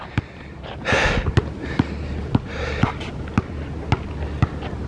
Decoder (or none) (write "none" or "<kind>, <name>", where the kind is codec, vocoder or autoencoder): none